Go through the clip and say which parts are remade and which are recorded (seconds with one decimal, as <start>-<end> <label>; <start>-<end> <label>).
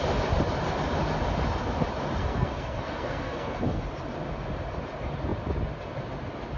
0.0-2.2 recorded; 2.2-3.8 remade; 3.8-6.6 recorded